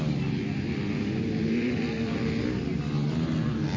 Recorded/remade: recorded